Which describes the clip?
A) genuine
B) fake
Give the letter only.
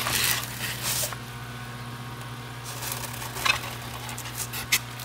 A